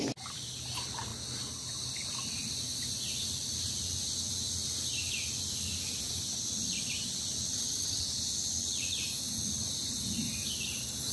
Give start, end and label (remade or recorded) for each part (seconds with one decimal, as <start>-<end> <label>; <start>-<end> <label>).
0.0-7.5 recorded; 7.5-8.0 remade; 8.0-11.1 recorded